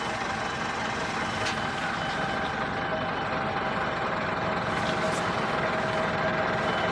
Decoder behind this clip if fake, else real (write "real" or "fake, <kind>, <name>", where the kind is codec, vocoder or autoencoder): real